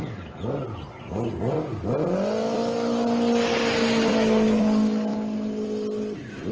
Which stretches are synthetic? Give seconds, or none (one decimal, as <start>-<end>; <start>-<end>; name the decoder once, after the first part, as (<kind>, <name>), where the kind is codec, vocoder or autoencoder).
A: none